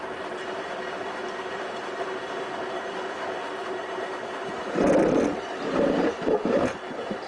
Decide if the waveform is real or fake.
real